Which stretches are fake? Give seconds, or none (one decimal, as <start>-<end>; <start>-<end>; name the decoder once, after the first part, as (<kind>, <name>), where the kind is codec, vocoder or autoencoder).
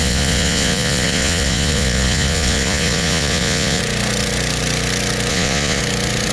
0.0-3.8 (vocoder, Vocos); 5.3-5.8